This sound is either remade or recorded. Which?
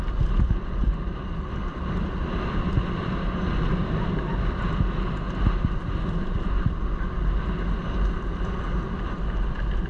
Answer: recorded